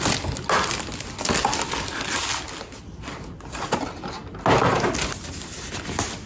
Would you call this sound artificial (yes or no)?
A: no